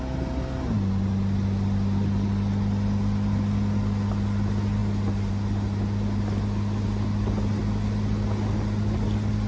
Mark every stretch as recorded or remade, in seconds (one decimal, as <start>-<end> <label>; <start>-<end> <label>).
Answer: 0.0-9.5 recorded